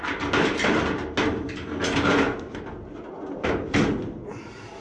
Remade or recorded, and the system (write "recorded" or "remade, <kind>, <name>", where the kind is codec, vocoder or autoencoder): recorded